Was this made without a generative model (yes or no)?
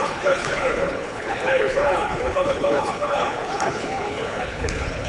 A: no